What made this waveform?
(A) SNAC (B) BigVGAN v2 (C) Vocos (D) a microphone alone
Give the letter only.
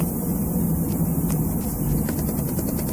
D